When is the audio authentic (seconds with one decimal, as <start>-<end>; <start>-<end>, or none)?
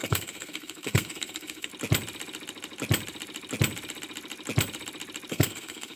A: 1.7-5.3